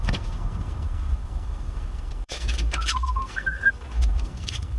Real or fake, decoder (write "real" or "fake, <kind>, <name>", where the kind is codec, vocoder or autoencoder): fake, codec, SNAC